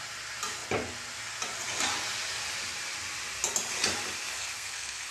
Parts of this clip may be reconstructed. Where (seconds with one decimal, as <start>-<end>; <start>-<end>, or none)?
4.4-5.1